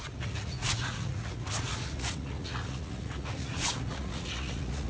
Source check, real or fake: fake